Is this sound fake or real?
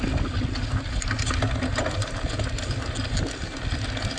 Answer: real